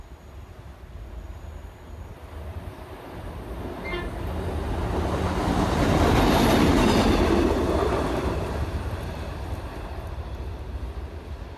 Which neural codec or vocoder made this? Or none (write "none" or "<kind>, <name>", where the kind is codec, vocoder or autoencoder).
none